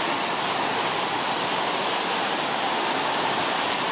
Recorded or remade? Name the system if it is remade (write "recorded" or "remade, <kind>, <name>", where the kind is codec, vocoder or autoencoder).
remade, vocoder, BigVGAN v2